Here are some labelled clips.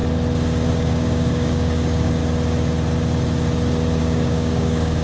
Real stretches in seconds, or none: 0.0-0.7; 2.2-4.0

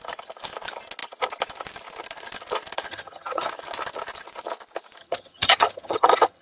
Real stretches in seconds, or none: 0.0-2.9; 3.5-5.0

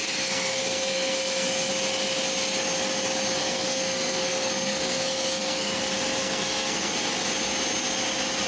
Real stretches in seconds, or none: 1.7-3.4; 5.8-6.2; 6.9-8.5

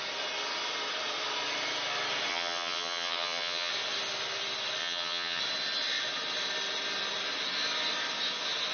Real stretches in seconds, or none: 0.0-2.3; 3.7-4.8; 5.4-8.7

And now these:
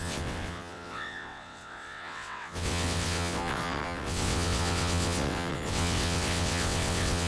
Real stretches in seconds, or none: none

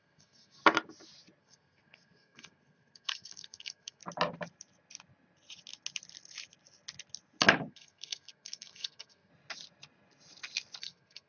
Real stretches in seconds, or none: 0.6-1.4; 4.0-7.7; 9.3-10.8